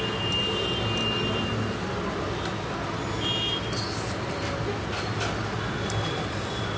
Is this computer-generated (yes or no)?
no